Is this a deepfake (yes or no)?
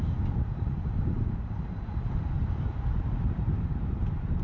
yes